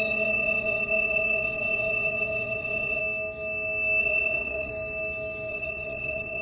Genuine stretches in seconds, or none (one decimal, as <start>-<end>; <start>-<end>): 3.0-4.0; 4.7-5.5